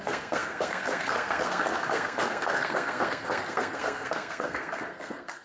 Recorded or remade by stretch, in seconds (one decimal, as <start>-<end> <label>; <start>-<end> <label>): 0.0-5.4 remade